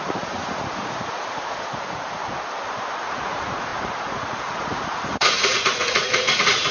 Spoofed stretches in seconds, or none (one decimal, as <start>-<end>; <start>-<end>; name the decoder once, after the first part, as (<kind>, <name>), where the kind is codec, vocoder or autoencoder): 0.0-2.2 (vocoder, Vocos); 3.0-6.7